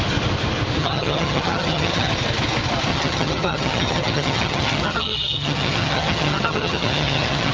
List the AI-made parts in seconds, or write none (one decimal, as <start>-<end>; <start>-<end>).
0.8-2.1; 2.9-7.5